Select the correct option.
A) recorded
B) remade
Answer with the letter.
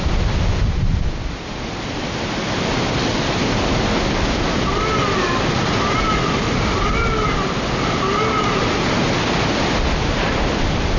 A